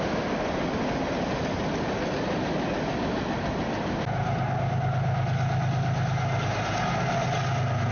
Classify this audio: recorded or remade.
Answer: recorded